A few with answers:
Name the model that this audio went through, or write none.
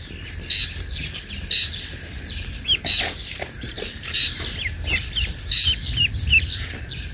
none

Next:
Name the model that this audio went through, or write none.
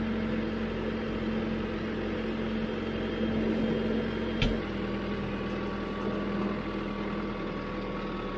none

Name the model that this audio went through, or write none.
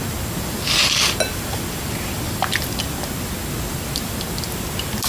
none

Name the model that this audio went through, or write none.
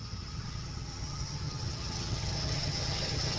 vocoder, HiFi-GAN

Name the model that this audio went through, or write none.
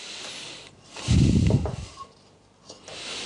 none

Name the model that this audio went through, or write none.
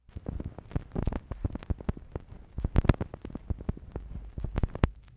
none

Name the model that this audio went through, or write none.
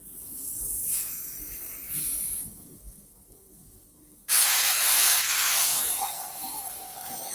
codec, SNAC